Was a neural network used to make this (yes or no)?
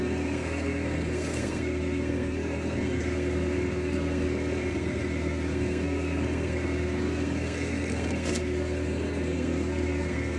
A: yes